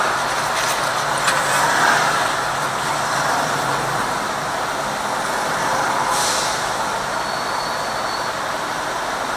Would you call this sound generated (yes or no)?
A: no